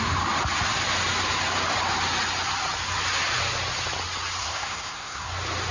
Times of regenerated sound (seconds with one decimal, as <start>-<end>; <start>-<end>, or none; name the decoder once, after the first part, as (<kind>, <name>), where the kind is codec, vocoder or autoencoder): 4.4-5.3 (codec, SNAC)